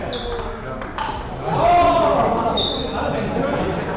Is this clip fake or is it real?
real